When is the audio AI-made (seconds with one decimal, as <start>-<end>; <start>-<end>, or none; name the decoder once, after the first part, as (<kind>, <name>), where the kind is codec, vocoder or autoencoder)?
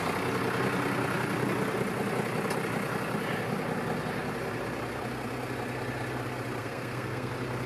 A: 6.6-7.3 (codec, SNAC)